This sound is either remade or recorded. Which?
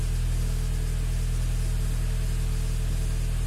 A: recorded